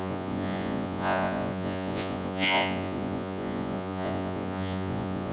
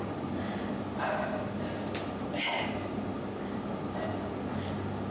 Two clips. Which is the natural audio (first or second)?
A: second